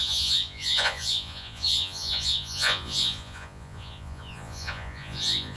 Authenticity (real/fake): fake